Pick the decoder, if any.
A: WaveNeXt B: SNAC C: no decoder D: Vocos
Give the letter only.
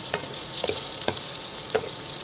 D